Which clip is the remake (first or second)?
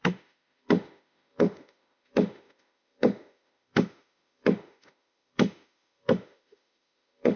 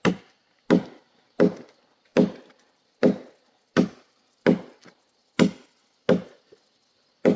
first